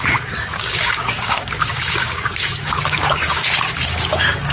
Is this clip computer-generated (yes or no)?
yes